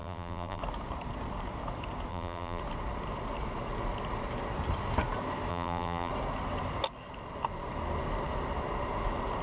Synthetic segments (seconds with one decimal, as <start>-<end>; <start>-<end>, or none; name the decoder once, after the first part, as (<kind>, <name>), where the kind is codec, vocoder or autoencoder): 0.0-0.6 (vocoder, BigVGAN v2); 2.1-2.6; 5.5-6.1